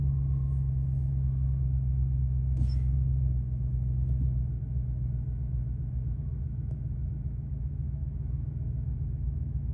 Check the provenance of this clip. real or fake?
fake